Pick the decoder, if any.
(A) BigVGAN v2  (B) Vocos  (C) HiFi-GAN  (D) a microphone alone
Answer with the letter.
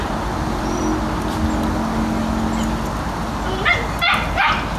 D